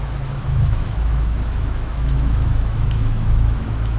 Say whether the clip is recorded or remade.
remade